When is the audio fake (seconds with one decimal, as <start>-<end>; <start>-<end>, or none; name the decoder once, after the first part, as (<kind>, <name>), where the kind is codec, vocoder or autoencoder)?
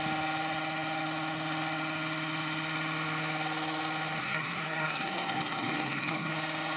4.2-6.3 (codec, SNAC)